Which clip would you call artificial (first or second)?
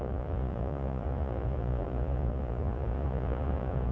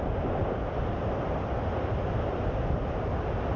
first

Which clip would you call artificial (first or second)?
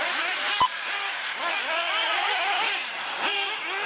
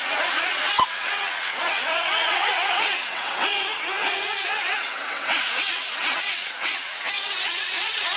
second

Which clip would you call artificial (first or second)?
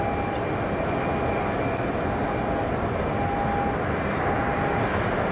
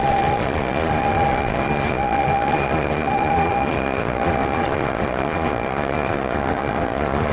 second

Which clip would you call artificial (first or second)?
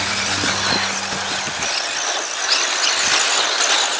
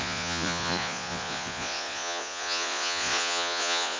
second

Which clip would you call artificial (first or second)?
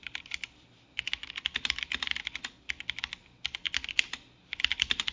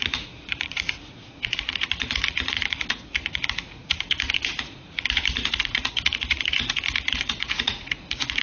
second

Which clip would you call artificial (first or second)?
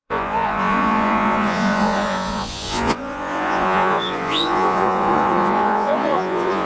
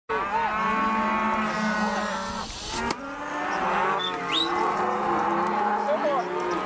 first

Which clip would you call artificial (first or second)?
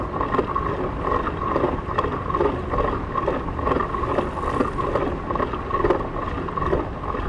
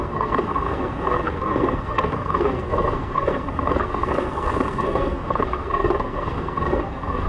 second